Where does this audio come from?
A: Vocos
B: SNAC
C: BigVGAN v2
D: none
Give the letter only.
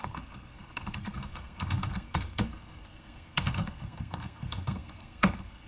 B